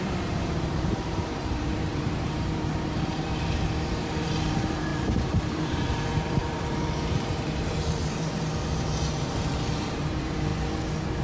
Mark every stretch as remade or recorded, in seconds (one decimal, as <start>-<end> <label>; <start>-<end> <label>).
0.0-10.5 remade; 10.5-11.2 recorded